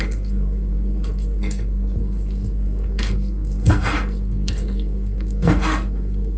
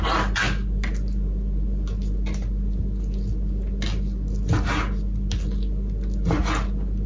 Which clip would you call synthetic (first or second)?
first